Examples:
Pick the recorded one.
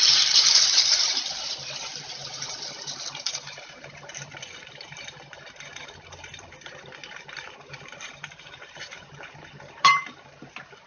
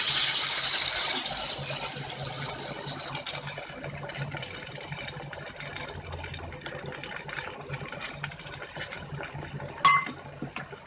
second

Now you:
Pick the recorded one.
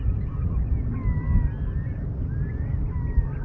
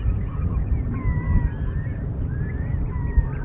first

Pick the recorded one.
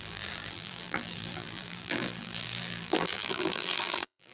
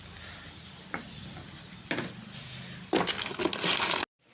second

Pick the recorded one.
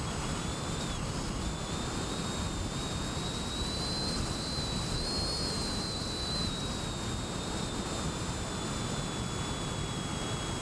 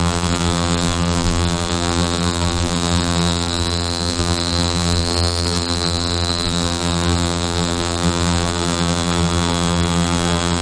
first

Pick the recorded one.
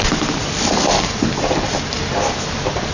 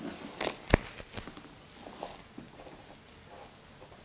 second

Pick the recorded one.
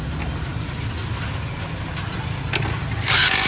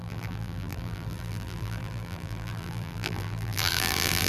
first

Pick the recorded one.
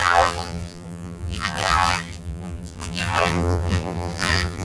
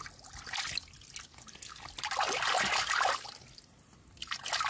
second